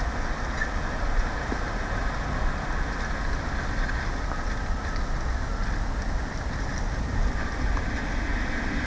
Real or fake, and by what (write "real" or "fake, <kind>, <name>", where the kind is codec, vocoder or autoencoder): real